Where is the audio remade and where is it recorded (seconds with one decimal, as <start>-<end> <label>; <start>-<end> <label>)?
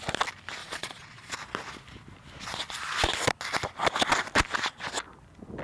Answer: 0.0-0.6 recorded; 0.6-1.3 remade; 1.3-5.6 recorded